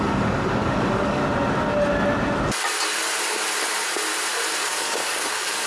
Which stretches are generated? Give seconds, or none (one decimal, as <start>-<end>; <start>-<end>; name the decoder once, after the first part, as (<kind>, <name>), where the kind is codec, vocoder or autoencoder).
0.0-1.2 (codec, DAC); 4.6-5.7